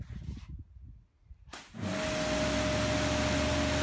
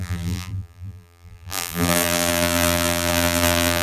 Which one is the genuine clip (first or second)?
first